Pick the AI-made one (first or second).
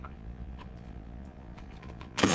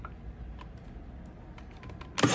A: first